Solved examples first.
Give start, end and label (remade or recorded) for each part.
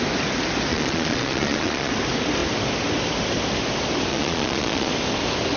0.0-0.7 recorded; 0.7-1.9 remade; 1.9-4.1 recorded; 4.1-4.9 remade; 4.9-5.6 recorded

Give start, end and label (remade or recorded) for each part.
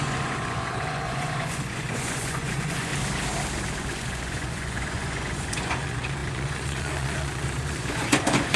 0.0-2.9 remade; 2.9-3.8 recorded; 3.8-8.6 remade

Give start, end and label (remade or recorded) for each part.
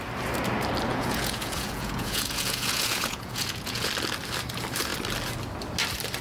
0.0-0.9 recorded; 0.9-3.9 remade; 3.9-6.2 recorded